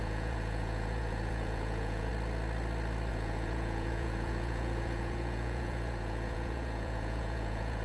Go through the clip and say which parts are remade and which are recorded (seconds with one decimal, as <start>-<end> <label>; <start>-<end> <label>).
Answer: 0.0-2.1 remade; 2.1-3.1 recorded; 3.1-7.8 remade